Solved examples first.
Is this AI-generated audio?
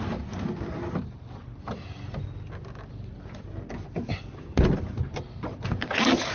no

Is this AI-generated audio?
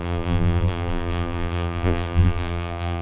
yes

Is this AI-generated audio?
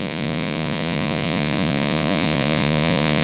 yes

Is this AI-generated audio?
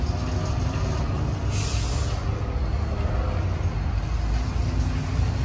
no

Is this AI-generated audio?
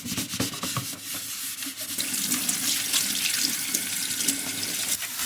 no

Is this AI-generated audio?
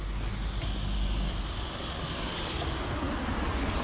no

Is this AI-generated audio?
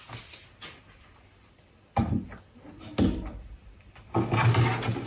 no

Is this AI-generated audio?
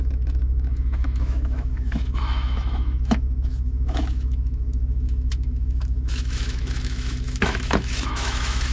yes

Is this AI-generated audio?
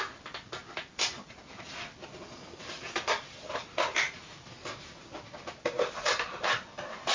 no